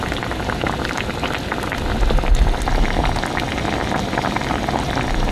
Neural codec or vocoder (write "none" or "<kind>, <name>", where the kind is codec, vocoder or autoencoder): none